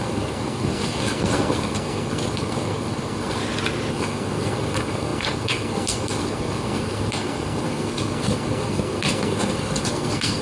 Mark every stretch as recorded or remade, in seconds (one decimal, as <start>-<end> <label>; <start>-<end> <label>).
0.0-3.4 remade; 3.4-3.9 recorded; 3.9-10.4 remade